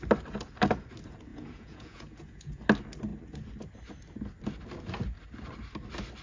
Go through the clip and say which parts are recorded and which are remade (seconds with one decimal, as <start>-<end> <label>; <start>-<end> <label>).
0.0-1.3 recorded; 1.3-2.6 remade; 2.6-6.2 recorded